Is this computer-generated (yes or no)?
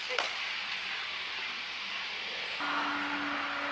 no